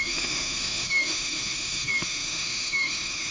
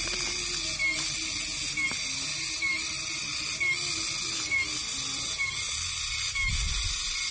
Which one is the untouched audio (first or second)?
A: second